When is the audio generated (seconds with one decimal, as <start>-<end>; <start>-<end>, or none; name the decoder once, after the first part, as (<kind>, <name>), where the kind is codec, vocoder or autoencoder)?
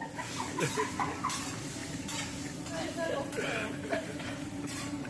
1.8-5.1 (vocoder, BigVGAN v2)